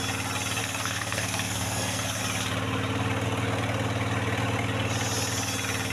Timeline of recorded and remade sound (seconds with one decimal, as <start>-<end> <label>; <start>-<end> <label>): 0.0-0.6 recorded; 0.6-2.2 remade; 2.2-5.9 recorded

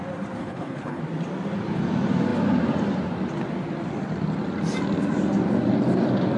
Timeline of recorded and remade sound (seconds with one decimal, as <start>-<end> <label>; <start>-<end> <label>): 0.0-0.4 recorded; 0.4-1.0 remade; 1.0-6.4 recorded

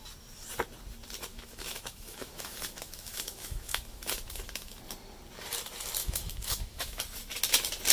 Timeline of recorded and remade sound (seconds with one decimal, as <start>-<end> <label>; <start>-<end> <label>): 0.0-1.3 recorded; 1.3-4.8 remade; 4.8-6.0 recorded; 6.0-7.0 remade; 7.0-7.9 recorded

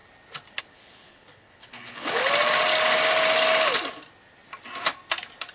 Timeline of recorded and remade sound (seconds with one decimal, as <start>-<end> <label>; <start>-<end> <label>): 0.0-0.6 recorded; 0.6-2.2 remade; 2.2-5.5 recorded

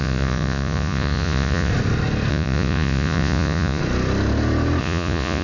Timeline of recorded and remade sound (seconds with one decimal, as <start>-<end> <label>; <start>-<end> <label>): 0.0-1.7 remade; 1.7-2.3 recorded; 2.3-3.8 remade; 3.8-4.8 recorded; 4.8-5.4 remade

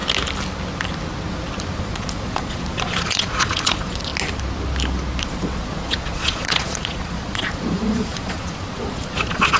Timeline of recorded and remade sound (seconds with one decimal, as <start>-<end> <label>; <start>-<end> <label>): 0.0-1.8 recorded; 1.8-4.1 remade; 4.1-5.2 recorded; 5.2-9.6 remade

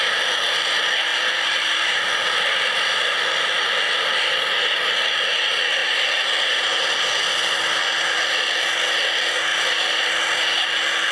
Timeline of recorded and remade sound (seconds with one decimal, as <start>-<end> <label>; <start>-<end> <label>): 0.0-1.1 recorded; 1.1-2.5 remade; 2.5-9.5 recorded; 9.5-10.1 remade; 10.1-11.1 recorded